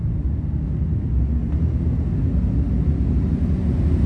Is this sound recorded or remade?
recorded